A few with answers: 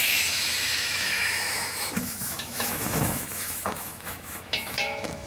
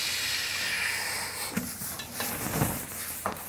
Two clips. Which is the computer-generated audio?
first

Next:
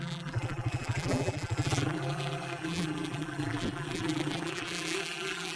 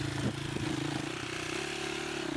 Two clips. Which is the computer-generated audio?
first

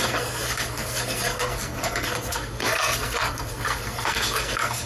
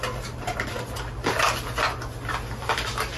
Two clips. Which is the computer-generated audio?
first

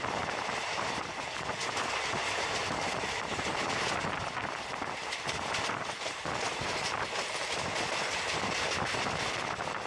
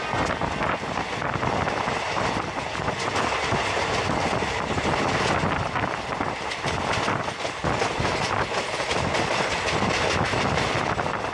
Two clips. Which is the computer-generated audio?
first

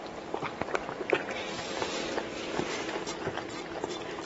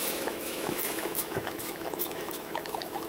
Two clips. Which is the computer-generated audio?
second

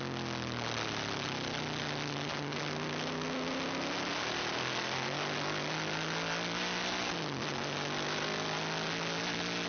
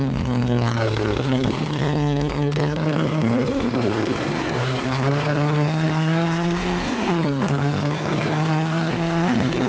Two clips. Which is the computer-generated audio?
second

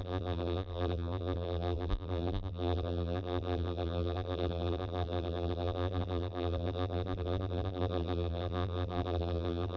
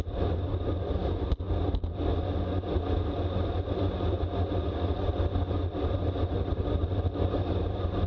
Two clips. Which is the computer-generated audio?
first